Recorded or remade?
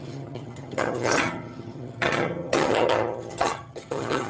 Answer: remade